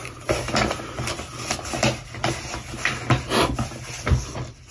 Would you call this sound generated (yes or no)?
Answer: no